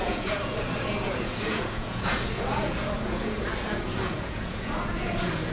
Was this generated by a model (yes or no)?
yes